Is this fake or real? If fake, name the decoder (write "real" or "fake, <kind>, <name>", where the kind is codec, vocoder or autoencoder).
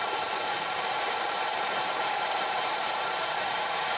fake, vocoder, BigVGAN v2